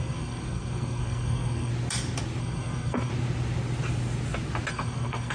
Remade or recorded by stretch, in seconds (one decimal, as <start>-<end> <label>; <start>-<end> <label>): 0.0-1.7 remade; 1.7-2.4 recorded; 2.4-3.1 remade; 3.1-4.7 recorded; 4.7-5.3 remade